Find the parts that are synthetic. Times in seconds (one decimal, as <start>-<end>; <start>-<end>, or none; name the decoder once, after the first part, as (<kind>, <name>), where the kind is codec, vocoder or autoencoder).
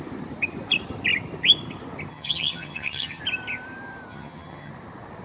2.1-3.2 (vocoder, HiFi-GAN); 4.1-4.7